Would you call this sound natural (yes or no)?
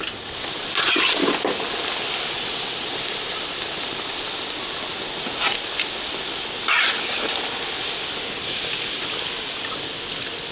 yes